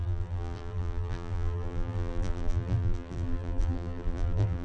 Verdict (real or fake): fake